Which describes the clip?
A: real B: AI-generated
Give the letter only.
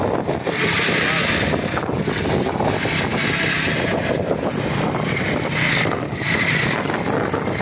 A